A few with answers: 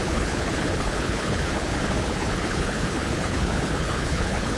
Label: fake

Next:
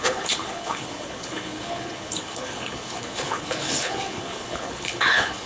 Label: fake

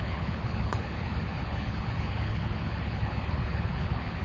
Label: fake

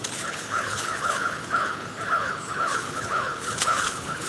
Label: fake